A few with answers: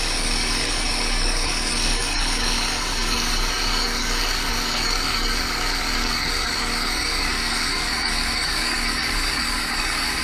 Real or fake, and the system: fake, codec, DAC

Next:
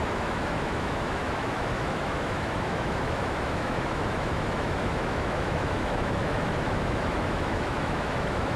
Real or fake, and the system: fake, autoencoder, DAC-VAE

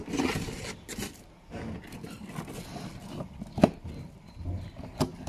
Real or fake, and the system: real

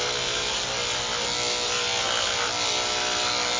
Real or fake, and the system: real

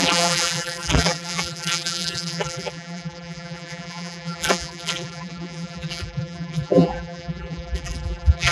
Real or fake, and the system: fake, vocoder, BigVGAN v2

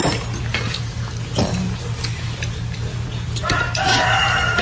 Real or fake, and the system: real